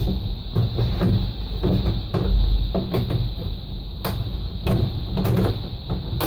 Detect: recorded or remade recorded